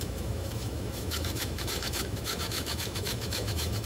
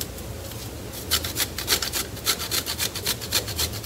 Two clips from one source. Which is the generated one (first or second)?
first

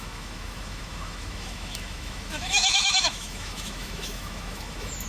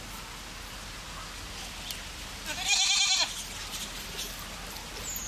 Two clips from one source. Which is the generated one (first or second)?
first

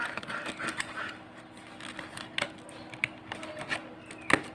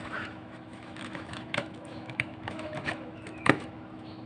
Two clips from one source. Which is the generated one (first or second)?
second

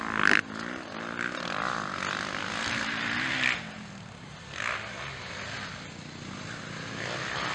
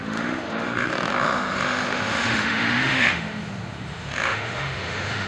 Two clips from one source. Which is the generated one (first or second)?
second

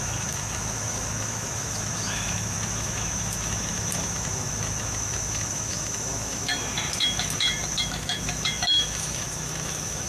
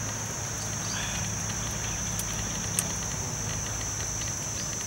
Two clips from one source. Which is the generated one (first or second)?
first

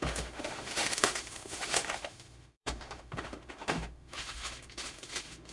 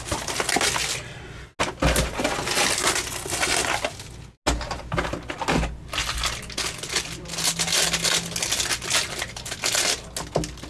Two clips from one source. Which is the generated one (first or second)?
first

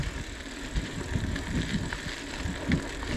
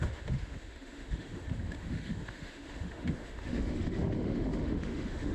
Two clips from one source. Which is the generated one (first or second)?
second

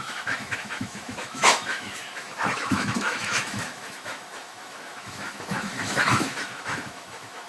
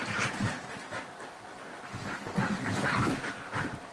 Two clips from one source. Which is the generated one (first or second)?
first